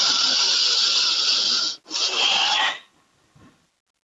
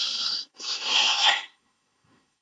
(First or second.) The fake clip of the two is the second